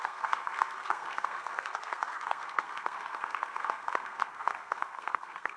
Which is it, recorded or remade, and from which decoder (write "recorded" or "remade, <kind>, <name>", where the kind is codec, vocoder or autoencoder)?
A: remade, codec, SNAC